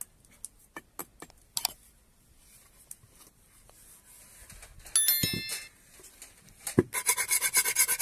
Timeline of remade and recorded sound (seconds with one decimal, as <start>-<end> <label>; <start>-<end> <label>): 0.0-8.0 recorded